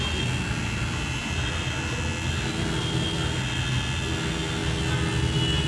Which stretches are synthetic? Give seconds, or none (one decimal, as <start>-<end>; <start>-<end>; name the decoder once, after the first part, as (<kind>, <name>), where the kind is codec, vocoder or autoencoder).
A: none